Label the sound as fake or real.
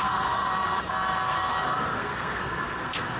fake